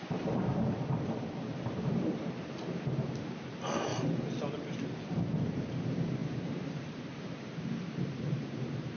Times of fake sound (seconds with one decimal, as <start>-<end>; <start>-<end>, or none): 0.0-3.9; 4.5-9.0